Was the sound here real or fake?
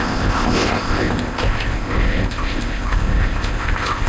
fake